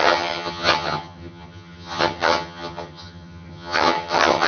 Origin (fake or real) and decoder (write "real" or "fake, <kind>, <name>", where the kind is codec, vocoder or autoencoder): fake, vocoder, HiFi-GAN